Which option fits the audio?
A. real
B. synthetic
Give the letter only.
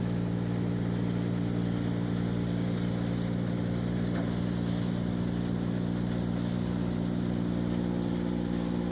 A